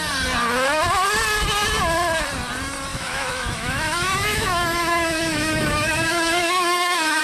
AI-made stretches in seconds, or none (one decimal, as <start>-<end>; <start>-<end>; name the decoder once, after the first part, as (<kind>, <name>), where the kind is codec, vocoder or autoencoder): 2.9-7.2 (autoencoder, DAC-VAE)